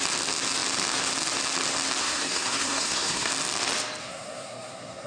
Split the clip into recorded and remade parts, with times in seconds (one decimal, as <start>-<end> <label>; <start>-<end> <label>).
0.0-2.0 recorded; 2.0-3.3 remade; 3.3-4.0 recorded; 4.0-5.1 remade

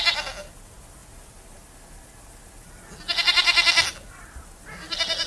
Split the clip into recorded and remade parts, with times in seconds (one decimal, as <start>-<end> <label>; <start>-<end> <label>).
0.0-5.3 recorded

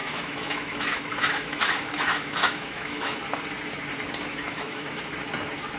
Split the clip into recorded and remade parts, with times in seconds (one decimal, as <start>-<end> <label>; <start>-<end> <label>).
0.0-3.2 remade; 3.2-4.3 recorded; 4.3-5.0 remade; 5.0-5.8 recorded